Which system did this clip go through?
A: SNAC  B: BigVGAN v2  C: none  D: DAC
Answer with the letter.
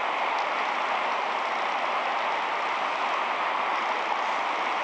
C